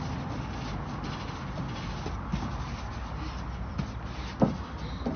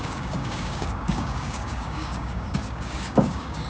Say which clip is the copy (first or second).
second